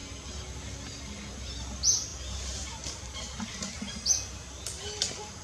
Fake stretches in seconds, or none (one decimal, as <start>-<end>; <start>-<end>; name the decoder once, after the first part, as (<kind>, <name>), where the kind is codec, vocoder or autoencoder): none